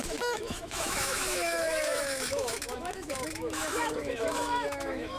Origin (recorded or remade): remade